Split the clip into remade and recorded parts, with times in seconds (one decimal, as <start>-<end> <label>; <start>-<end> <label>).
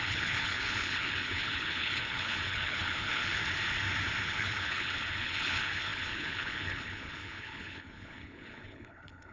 0.0-3.4 remade; 3.4-4.2 recorded; 4.2-9.3 remade